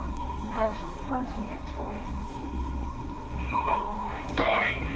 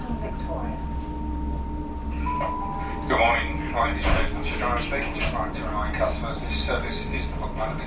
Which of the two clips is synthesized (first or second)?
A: first